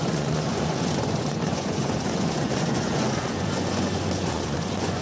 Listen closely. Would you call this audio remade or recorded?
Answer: remade